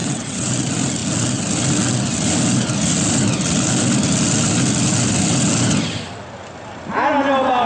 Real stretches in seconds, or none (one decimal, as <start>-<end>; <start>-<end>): 0.5-7.7